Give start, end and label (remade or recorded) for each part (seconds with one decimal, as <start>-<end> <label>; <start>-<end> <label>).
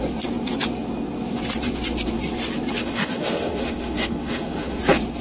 0.0-2.8 recorded; 2.8-4.8 remade; 4.8-5.2 recorded